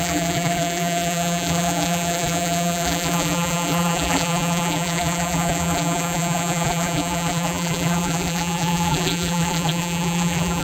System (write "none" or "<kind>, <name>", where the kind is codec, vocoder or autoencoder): vocoder, BigVGAN v2